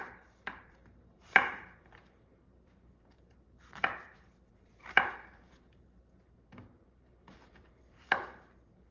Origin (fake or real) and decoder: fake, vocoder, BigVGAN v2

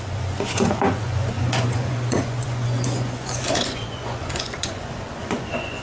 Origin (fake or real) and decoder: fake, vocoder, Vocos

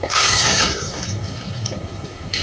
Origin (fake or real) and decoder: fake, codec, SNAC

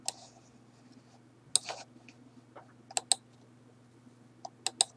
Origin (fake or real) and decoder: real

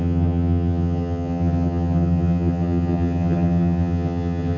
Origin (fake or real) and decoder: fake, vocoder, HiFi-GAN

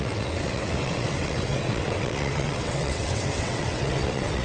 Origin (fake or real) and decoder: fake, vocoder, WaveNeXt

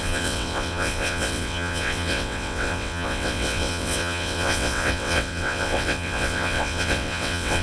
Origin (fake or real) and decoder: fake, vocoder, WaveNeXt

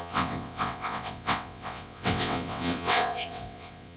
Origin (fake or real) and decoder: fake, vocoder, WaveNeXt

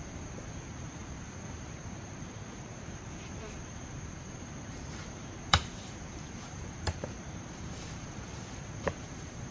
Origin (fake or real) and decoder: fake, vocoder, BigVGAN v2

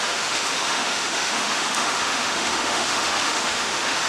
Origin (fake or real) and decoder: fake, autoencoder, DAC-VAE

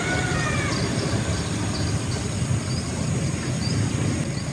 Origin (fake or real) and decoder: real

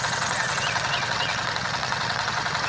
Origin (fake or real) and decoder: fake, vocoder, WaveNeXt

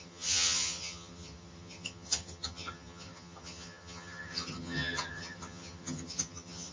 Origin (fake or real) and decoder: fake, vocoder, HiFi-GAN